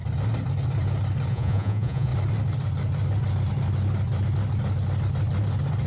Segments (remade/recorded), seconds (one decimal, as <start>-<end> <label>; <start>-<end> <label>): 0.0-1.3 recorded; 1.3-2.1 remade; 2.1-5.9 recorded